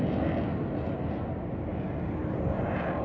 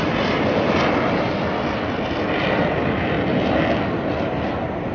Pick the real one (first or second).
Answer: first